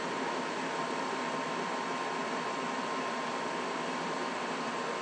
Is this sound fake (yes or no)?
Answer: no